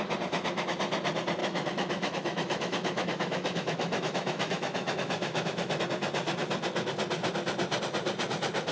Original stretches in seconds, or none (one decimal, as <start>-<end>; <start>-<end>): 0.0-1.4; 5.8-8.7